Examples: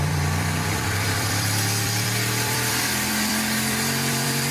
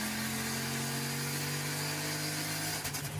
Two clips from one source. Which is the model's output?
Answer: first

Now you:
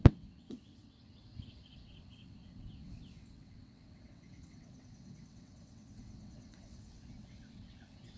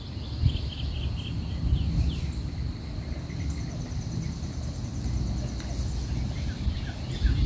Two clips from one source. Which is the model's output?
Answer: first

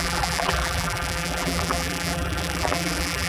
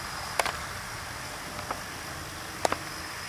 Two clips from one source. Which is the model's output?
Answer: first